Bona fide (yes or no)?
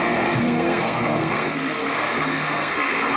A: no